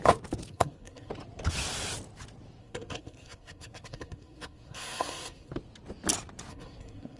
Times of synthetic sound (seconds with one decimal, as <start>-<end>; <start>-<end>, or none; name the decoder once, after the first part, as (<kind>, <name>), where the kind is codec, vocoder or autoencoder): 0.5-1.1 (codec, SNAC); 2.6-5.5; 6.5-7.2